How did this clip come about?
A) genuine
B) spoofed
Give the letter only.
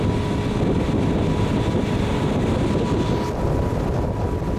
A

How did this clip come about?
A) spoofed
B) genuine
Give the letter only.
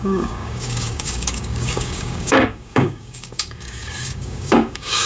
A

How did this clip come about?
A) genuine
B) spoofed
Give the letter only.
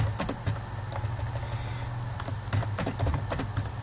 A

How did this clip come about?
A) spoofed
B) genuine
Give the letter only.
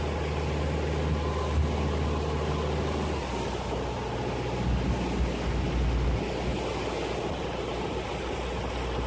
B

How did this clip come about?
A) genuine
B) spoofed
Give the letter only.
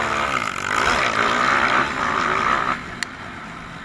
A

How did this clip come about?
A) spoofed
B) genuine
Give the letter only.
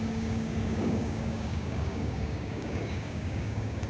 A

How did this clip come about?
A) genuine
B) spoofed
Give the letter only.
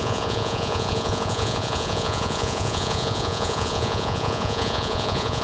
B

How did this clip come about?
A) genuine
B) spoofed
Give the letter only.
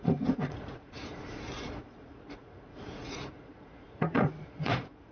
B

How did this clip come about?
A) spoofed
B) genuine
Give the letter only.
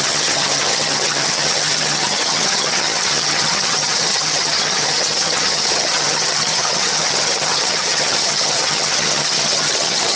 A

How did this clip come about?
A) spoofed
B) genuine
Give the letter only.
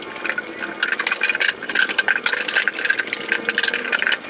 B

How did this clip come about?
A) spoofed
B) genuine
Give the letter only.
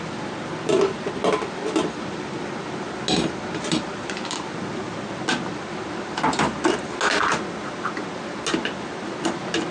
B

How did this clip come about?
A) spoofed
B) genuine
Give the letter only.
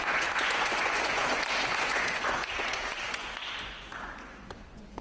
A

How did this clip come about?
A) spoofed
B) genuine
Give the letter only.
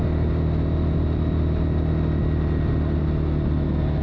B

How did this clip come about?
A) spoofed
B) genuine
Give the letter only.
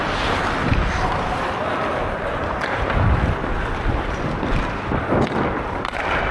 B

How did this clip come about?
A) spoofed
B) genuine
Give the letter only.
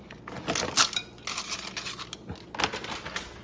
B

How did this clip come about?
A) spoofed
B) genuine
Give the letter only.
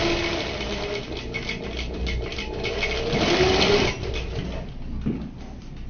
B